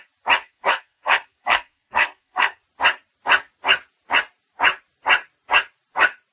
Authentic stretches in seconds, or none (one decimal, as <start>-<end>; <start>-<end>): 0.0-0.4; 2.6-6.3